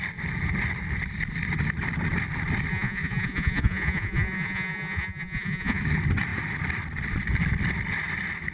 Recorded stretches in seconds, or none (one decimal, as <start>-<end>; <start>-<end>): 0.0-2.7; 5.8-8.5